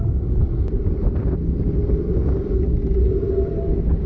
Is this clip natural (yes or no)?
yes